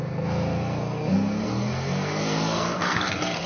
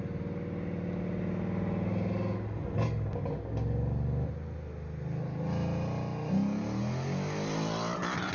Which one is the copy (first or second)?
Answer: first